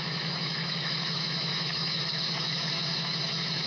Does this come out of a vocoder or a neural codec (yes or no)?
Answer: yes